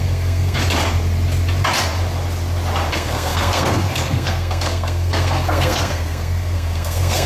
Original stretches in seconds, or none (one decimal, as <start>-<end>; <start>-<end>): 0.6-2.9

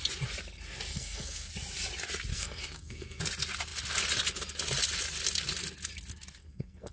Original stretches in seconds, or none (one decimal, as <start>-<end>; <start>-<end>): 0.0-0.9; 1.5-2.3; 3.2-6.4

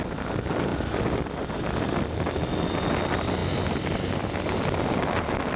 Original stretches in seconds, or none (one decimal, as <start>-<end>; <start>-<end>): 0.0-5.6